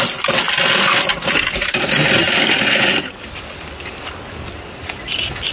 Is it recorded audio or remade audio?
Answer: recorded